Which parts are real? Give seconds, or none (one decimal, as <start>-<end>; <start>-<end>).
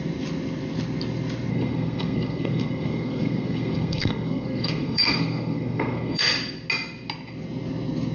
0.0-1.5; 6.2-8.1